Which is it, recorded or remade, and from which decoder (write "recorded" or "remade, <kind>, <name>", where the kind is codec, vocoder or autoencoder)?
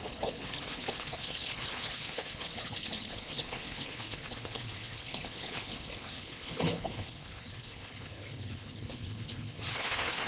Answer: remade, codec, HILCodec